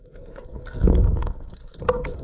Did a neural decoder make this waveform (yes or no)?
yes